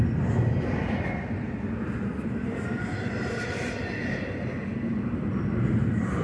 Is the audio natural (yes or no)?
yes